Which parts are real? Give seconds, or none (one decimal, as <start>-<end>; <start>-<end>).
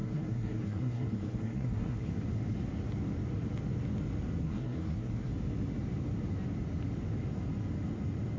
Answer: 2.1-4.4; 5.3-8.4